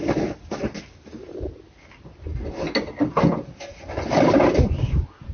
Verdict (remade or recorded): recorded